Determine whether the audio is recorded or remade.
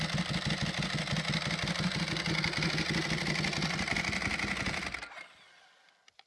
recorded